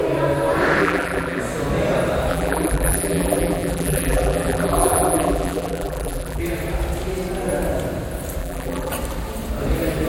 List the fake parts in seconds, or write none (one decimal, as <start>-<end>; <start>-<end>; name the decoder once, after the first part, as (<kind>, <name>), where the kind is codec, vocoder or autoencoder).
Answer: 0.8-1.4 (vocoder, BigVGAN v2); 2.3-6.4; 8.4-8.9